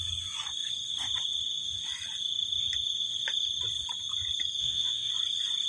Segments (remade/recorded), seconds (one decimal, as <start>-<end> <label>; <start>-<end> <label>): 0.0-4.6 recorded; 4.6-5.1 remade; 5.1-5.7 recorded